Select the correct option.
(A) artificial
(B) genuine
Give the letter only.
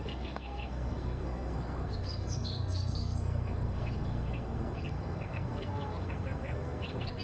A